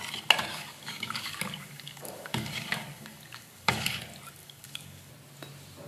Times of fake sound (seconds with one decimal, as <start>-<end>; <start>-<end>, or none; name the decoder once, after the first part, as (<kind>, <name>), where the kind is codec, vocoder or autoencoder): 0.5-4.0 (codec, DAC); 4.4-5.1